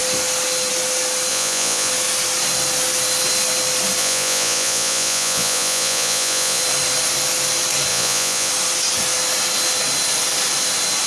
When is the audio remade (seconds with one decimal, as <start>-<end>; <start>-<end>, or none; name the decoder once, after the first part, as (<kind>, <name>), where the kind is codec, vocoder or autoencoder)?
1.3-1.9 (vocoder, Vocos); 4.0-6.6; 7.9-8.5

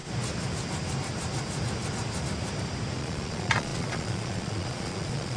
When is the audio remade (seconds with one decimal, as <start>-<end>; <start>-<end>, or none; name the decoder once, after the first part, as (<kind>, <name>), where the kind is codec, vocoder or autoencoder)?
3.0-5.4 (vocoder, Vocos)

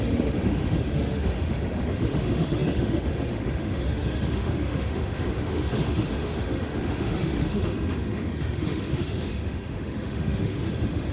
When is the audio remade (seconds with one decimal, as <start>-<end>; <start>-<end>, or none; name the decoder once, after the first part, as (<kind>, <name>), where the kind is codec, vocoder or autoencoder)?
0.0-11.1 (autoencoder, DAC-VAE)

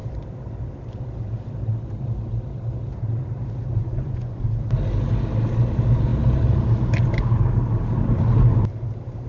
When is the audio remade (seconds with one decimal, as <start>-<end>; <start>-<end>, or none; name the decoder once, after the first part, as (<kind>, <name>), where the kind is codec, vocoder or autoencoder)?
3.8-4.4 (vocoder, Vocos)

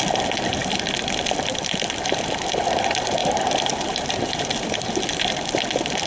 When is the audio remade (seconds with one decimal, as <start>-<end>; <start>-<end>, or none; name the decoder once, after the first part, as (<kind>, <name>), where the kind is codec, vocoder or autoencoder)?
3.2-5.3 (vocoder, BigVGAN v2)